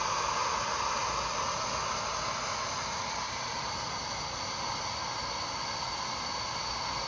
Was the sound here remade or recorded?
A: recorded